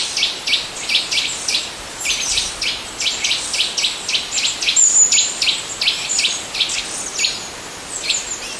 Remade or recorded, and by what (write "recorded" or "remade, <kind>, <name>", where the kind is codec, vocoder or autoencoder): recorded